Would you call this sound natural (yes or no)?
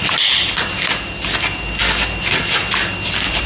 yes